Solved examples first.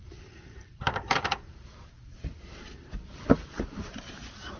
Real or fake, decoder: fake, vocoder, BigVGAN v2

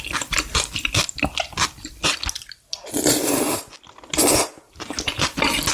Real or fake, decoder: real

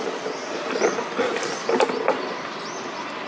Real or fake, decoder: real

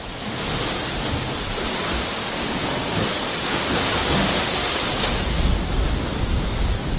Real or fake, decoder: real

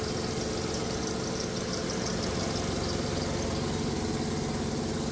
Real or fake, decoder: real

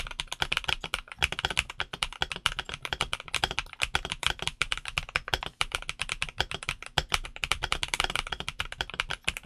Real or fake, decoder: fake, vocoder, BigVGAN v2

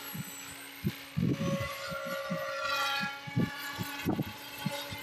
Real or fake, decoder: real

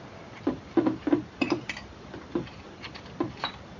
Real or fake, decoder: fake, vocoder, BigVGAN v2